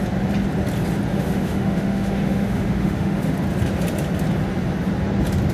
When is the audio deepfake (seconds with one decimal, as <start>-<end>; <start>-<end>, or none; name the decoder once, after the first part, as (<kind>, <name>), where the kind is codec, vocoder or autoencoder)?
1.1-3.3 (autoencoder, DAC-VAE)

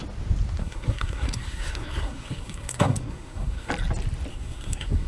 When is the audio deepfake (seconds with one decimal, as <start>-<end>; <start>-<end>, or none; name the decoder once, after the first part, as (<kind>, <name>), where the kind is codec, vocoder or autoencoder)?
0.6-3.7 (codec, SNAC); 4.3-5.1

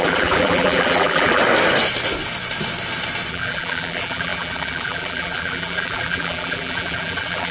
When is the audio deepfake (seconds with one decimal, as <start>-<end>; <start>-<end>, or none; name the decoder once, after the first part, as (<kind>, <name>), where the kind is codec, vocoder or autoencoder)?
0.0-1.4 (vocoder, BigVGAN v2); 3.3-7.5